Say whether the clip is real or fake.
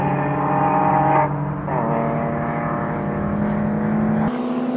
real